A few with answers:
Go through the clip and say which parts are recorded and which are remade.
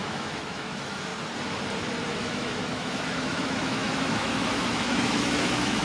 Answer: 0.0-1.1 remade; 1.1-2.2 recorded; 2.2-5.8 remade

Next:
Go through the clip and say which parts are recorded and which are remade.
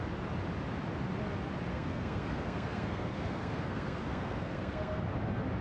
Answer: 0.0-1.7 recorded; 1.7-5.0 remade; 5.0-5.6 recorded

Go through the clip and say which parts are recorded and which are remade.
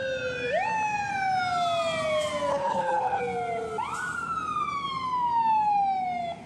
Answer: 0.0-2.5 recorded; 2.5-3.2 remade; 3.2-6.5 recorded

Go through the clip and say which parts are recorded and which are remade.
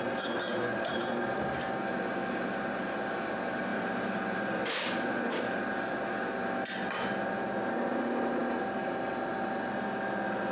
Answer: 0.0-3.7 recorded; 3.7-4.9 remade; 4.9-10.5 recorded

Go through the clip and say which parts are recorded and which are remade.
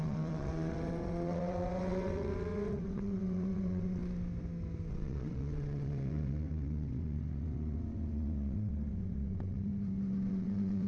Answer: 0.0-4.0 remade; 4.0-4.9 recorded; 4.9-9.7 remade; 9.7-10.3 recorded; 10.3-10.9 remade